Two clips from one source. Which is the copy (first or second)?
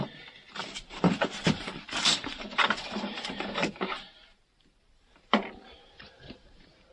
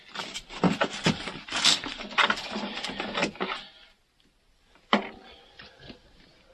first